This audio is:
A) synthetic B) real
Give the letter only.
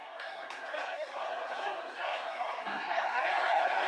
A